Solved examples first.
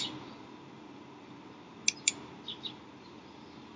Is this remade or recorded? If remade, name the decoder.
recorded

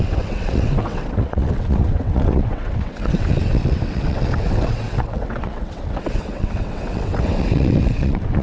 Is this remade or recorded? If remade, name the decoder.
remade, vocoder, WaveNeXt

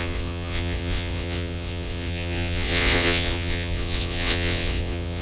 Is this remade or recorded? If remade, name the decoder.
remade, vocoder, WaveNeXt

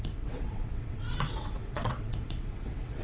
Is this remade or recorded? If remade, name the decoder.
remade, vocoder, WaveNeXt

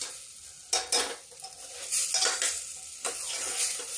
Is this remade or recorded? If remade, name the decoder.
recorded